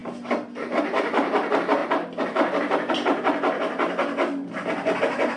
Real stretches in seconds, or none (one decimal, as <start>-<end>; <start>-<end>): 0.0-5.4